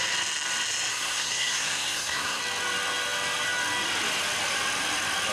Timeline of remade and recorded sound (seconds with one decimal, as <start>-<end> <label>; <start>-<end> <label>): 0.0-0.9 recorded; 0.9-2.4 remade; 2.4-5.3 recorded

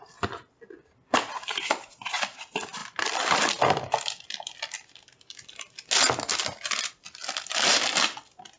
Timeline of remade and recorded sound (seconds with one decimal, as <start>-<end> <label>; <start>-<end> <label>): 0.0-8.6 recorded

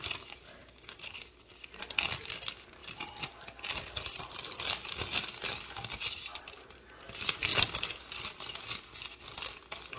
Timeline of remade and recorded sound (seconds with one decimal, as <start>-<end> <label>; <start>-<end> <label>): 0.0-0.6 recorded; 0.6-1.2 remade; 1.2-10.0 recorded

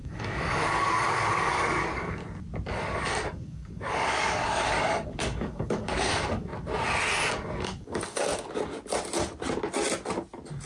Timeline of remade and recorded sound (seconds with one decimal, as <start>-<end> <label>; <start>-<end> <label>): 0.0-2.2 remade; 2.2-2.7 recorded; 2.7-6.5 remade; 6.5-7.3 recorded; 7.3-8.3 remade; 8.3-10.7 recorded

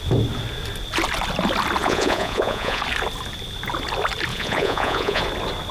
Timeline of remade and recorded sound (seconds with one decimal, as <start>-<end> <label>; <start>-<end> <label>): 0.0-1.8 recorded; 1.8-2.8 remade; 2.8-4.3 recorded; 4.3-5.2 remade; 5.2-5.7 recorded

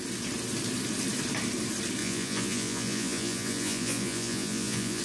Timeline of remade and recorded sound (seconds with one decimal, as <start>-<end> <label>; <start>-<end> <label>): 0.0-2.0 recorded; 2.0-5.0 remade